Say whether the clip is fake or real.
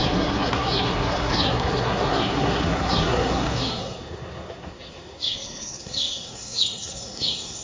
fake